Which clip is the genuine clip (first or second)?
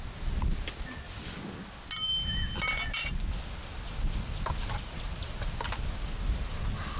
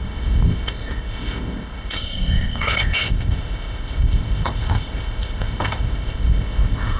first